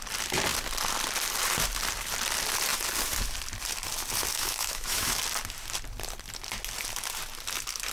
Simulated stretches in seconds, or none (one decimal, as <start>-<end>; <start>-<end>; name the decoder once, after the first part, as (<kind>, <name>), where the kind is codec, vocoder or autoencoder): 4.3-5.2 (autoencoder, DAC-VAE)

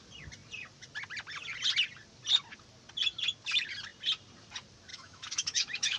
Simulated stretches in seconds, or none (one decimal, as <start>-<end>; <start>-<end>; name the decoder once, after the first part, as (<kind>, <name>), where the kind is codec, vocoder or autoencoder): 4.9-6.0 (autoencoder, DAC-VAE)

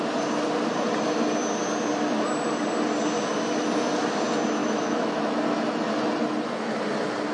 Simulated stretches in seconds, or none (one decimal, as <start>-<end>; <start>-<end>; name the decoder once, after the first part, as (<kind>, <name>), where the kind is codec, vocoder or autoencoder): 4.6-5.4 (autoencoder, DAC-VAE)

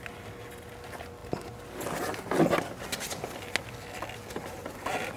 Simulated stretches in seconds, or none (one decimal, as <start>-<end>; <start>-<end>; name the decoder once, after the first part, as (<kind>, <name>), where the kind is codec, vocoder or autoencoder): none

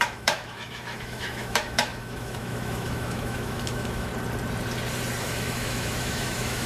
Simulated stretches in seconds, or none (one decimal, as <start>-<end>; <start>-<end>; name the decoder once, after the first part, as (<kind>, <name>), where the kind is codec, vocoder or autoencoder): 0.0-4.1 (autoencoder, DAC-VAE); 5.2-6.7

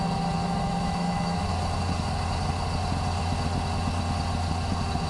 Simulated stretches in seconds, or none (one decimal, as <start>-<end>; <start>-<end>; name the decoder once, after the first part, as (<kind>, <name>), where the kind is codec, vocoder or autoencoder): 0.4-1.5 (autoencoder, DAC-VAE)

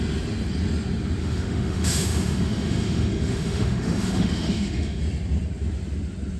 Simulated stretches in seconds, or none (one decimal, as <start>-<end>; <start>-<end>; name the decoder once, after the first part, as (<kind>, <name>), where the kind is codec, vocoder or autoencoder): 1.2-5.0 (autoencoder, DAC-VAE)